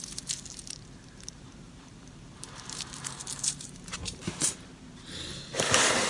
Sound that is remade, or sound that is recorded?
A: remade